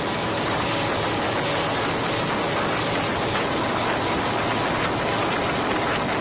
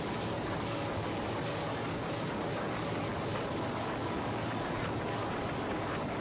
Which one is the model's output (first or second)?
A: second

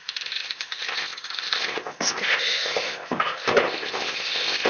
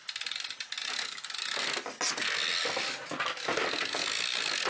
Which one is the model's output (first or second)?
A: first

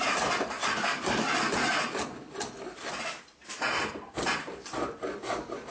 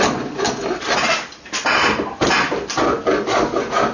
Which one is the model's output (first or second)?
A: first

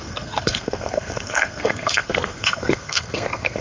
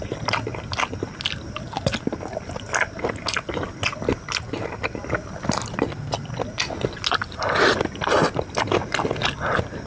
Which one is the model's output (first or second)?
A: first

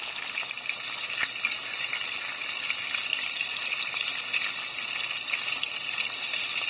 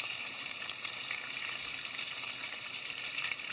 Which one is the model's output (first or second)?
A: second